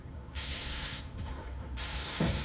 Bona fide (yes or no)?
no